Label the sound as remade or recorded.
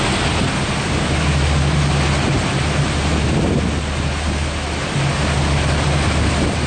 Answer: recorded